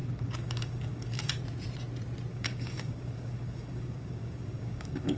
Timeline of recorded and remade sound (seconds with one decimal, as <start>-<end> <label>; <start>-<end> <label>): 0.0-1.3 remade; 1.3-2.3 recorded; 2.3-5.2 remade